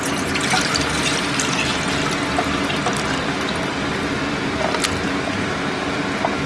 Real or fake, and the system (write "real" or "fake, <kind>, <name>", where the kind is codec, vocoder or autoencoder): real